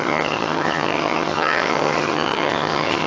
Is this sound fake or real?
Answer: fake